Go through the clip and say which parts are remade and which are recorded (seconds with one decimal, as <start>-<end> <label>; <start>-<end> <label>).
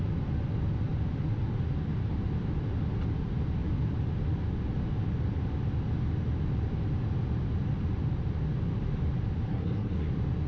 0.0-9.5 recorded; 9.5-10.1 remade; 10.1-10.5 recorded